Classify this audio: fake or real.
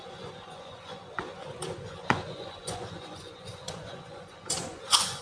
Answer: fake